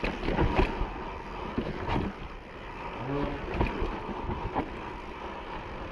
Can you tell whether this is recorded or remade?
recorded